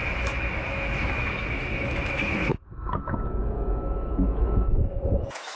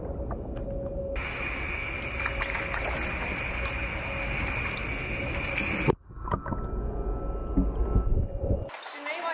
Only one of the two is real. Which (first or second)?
second